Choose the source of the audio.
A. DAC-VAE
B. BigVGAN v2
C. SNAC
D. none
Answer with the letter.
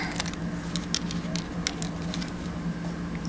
D